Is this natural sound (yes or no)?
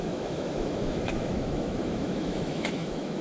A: no